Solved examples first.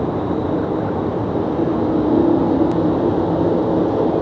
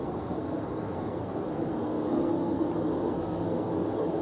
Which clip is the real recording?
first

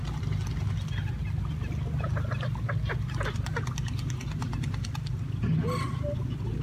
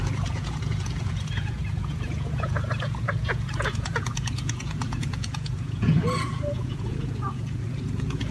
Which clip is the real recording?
first